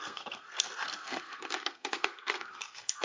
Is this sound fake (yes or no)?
yes